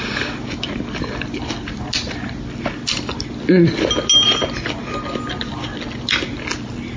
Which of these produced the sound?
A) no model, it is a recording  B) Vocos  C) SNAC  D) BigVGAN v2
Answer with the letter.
A